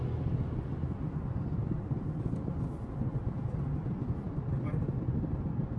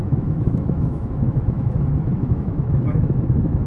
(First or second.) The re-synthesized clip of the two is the second